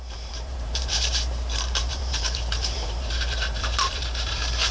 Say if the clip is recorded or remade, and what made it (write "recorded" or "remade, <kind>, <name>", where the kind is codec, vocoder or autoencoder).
remade, vocoder, BigVGAN v2